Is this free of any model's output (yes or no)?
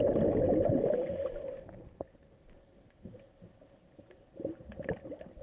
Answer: yes